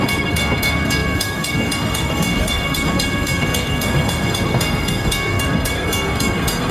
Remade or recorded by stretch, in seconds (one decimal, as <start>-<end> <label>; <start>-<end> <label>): 0.0-6.7 remade